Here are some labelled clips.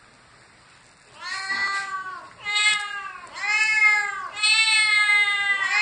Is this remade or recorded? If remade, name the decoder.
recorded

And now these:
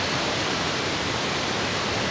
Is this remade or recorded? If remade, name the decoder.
remade, vocoder, BigVGAN v2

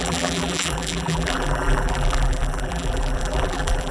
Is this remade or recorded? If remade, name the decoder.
remade, vocoder, BigVGAN v2